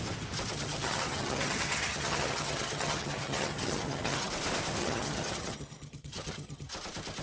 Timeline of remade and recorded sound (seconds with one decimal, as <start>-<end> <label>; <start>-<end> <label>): 0.0-0.5 recorded; 0.5-4.3 remade; 4.3-4.8 recorded; 4.8-6.7 remade; 6.7-7.2 recorded